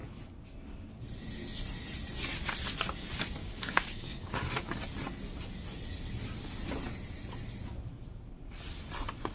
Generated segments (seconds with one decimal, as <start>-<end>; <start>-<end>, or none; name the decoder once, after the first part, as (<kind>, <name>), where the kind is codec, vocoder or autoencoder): 3.4-4.3 (codec, DAC)